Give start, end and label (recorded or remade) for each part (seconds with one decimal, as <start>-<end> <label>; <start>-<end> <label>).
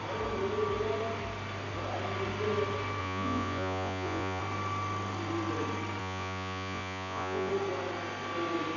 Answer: 0.0-3.0 recorded; 3.0-4.4 remade; 4.4-6.0 recorded; 6.0-7.5 remade; 7.5-8.8 recorded